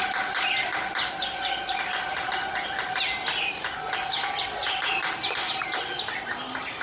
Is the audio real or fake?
real